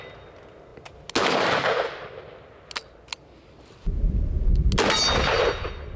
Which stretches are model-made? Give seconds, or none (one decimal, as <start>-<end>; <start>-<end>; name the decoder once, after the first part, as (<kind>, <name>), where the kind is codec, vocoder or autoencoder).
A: none